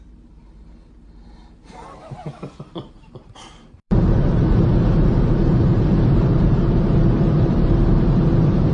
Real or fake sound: fake